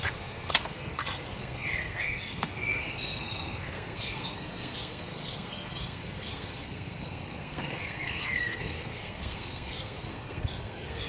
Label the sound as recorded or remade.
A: remade